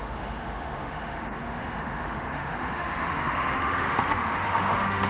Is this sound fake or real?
fake